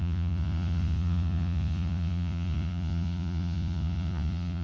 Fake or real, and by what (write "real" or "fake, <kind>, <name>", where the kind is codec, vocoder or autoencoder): fake, vocoder, Vocos